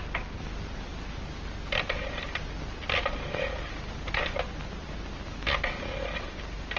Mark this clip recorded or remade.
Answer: recorded